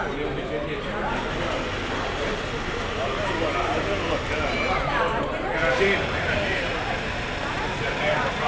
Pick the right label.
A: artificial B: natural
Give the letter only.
B